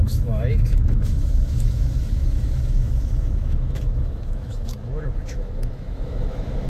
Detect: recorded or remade remade